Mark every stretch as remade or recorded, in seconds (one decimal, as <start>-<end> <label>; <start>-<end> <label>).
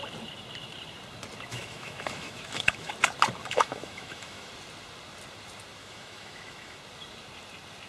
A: 0.0-1.5 recorded; 1.5-2.9 remade; 2.9-3.4 recorded; 3.4-4.5 remade; 4.5-5.8 recorded; 5.8-6.8 remade; 6.8-7.9 recorded